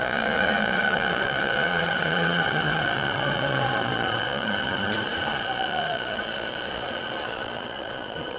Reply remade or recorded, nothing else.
remade